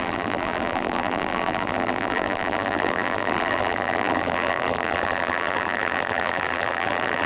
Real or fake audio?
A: fake